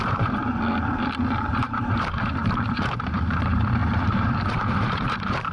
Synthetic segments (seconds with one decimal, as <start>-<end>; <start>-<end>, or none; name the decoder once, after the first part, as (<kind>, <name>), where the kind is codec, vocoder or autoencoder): 0.0-0.4 (vocoder, BigVGAN v2); 1.5-5.5